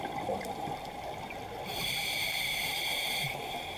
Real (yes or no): yes